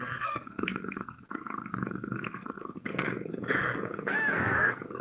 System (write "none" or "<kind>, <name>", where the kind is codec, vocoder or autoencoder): codec, SNAC